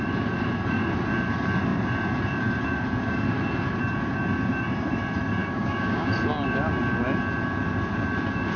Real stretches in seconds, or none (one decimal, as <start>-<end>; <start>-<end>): 0.0-5.4; 6.1-8.6